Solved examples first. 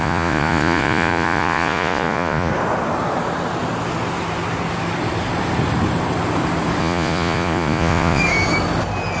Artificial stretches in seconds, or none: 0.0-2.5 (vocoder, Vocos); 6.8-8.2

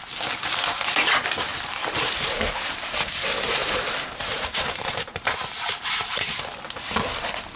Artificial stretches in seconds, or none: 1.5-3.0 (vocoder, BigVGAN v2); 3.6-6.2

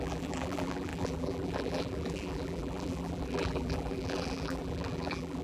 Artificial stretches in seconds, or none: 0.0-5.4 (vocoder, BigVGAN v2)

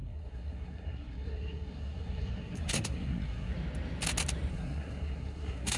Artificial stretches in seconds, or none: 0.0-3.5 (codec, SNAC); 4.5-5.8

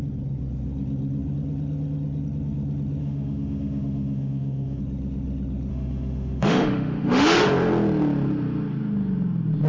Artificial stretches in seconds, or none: 3.0-4.8 (autoencoder, DAC-VAE); 5.7-7.5

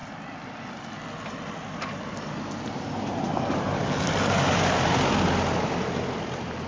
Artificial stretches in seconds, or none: none

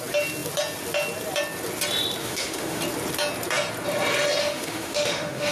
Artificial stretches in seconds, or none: 2.2-2.8 (autoencoder, DAC-VAE); 4.4-5.5